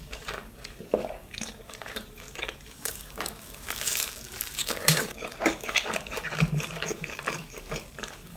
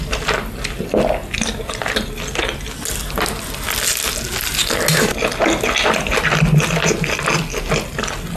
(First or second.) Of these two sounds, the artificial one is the first